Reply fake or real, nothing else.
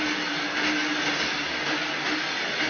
real